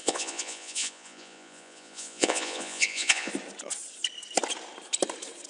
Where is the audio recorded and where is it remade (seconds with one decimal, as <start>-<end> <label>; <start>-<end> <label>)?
0.0-3.3 remade; 3.3-5.5 recorded